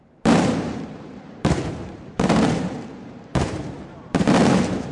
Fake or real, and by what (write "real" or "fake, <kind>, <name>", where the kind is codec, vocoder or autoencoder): fake, vocoder, BigVGAN v2